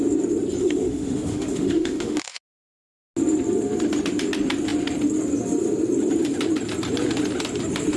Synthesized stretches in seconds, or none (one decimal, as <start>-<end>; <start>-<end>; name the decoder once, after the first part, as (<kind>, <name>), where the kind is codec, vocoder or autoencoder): 0.6-2.4 (autoencoder, DAC-VAE)